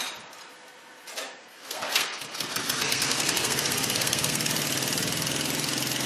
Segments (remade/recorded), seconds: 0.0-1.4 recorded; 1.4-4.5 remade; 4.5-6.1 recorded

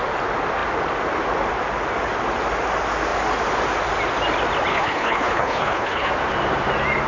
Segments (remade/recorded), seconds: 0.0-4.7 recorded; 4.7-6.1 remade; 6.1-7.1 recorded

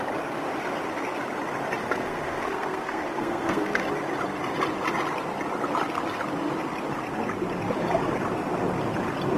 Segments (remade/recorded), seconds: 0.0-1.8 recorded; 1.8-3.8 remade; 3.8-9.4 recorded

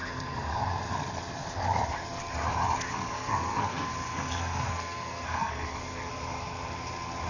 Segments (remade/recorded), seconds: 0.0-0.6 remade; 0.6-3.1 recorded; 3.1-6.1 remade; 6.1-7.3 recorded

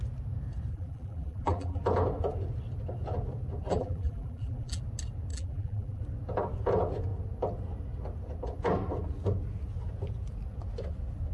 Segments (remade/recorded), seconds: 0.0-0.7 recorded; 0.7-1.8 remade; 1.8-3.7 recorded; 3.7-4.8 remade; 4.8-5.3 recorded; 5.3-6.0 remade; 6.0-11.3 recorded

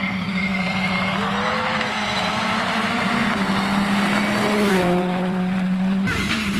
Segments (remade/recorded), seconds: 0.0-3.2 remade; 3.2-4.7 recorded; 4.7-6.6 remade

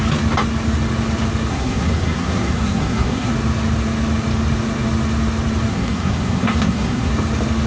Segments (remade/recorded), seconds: 0.0-1.5 recorded; 1.5-3.3 remade; 3.3-5.7 recorded; 5.7-7.1 remade; 7.1-7.7 recorded